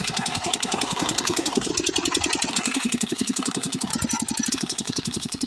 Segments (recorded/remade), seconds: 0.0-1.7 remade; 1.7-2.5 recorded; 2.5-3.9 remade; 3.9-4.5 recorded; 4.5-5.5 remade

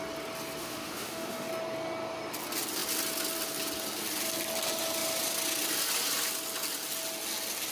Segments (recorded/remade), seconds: 0.0-0.6 recorded; 0.6-1.5 remade; 1.5-7.7 recorded

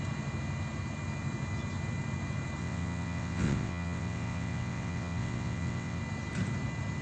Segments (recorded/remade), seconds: 0.0-2.6 recorded; 2.6-6.0 remade; 6.0-7.0 recorded

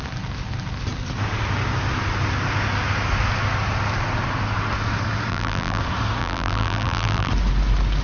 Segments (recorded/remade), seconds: 0.0-5.3 recorded; 5.3-5.8 remade; 5.8-6.2 recorded; 6.2-7.3 remade; 7.3-8.0 recorded

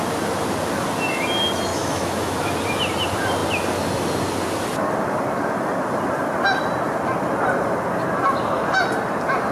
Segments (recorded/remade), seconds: 0.0-1.7 recorded; 1.7-2.5 remade; 2.5-9.5 recorded